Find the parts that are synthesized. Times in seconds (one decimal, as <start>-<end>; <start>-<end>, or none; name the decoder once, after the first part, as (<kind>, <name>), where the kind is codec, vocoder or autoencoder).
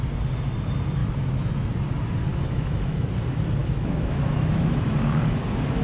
1.0-1.7 (autoencoder, DAC-VAE); 2.3-3.1; 3.6-5.2